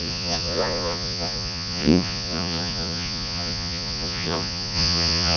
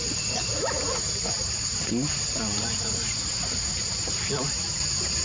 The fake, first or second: first